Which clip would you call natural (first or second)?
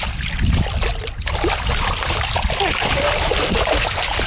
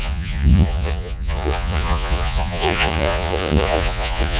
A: first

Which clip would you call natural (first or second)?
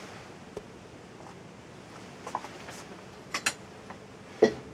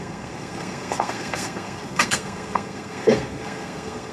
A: first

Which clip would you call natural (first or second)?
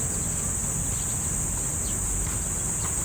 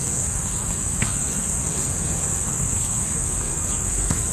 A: first